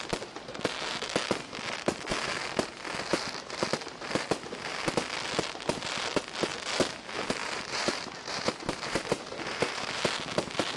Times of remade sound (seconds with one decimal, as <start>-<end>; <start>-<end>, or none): 3.1-3.6; 7.4-10.0